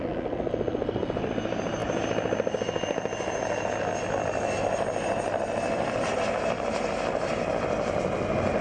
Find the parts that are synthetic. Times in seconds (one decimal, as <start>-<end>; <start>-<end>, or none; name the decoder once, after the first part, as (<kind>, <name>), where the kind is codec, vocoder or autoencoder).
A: none